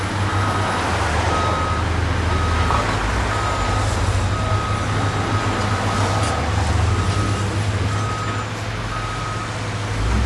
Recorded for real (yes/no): yes